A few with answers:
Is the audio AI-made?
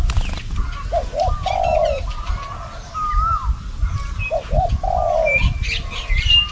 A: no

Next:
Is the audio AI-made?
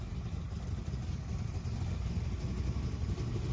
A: no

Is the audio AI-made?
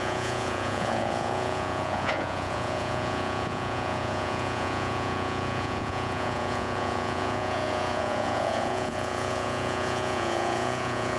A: yes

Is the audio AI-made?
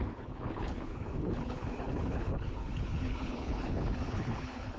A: yes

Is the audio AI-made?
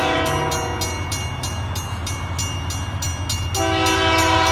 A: no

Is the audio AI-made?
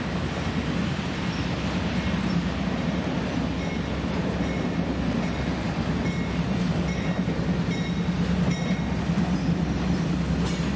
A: no